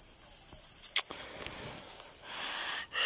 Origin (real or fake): real